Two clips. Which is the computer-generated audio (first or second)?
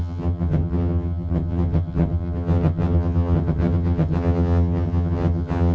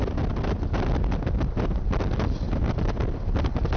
first